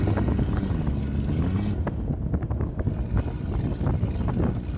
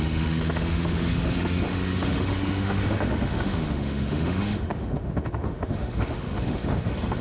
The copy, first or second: second